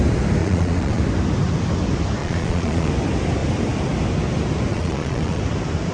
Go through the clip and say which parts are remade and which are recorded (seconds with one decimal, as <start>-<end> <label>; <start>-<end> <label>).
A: 0.0-0.4 recorded; 0.4-1.0 remade; 1.0-2.2 recorded; 2.2-2.9 remade; 2.9-4.7 recorded; 4.7-5.4 remade; 5.4-5.9 recorded